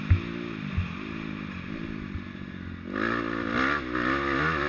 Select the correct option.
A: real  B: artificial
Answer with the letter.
A